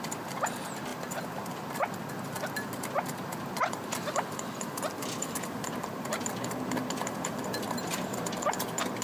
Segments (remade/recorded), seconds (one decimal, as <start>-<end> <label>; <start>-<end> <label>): 0.0-9.0 remade